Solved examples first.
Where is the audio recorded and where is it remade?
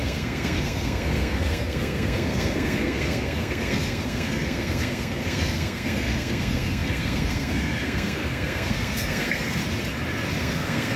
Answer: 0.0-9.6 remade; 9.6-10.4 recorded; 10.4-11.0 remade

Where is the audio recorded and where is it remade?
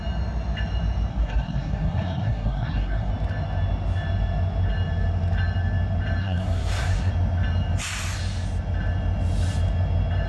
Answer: 0.0-1.1 recorded; 1.1-3.1 remade; 3.1-6.2 recorded; 6.2-7.1 remade; 7.1-10.3 recorded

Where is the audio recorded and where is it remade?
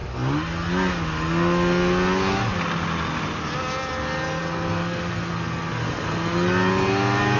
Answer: 0.0-7.4 recorded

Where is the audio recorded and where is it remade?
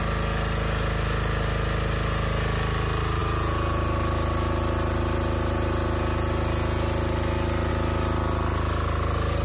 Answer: 0.0-9.4 recorded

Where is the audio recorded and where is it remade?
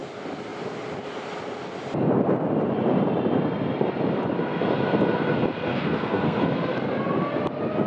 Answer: 0.0-5.7 recorded; 5.7-6.4 remade; 6.4-7.9 recorded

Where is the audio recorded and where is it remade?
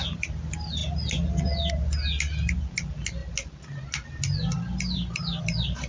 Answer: 0.0-5.9 recorded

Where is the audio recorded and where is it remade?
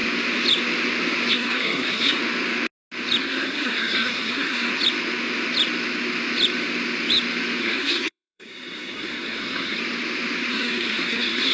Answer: 0.0-1.3 recorded; 1.3-2.2 remade; 2.2-3.2 recorded; 3.2-4.7 remade; 4.7-7.6 recorded; 7.6-9.8 remade; 9.8-10.5 recorded; 10.5-11.5 remade